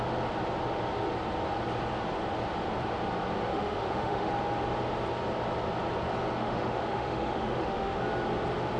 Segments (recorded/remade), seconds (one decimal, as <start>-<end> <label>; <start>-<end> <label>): 0.0-3.5 recorded; 3.5-4.3 remade; 4.3-6.4 recorded; 6.4-8.0 remade; 8.0-8.8 recorded

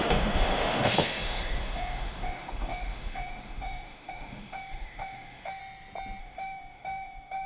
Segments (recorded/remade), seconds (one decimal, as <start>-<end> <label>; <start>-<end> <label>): 0.0-5.6 remade; 5.6-6.2 recorded; 6.2-7.5 remade